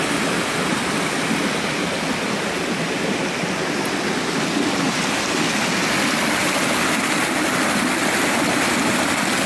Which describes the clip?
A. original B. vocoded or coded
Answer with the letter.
A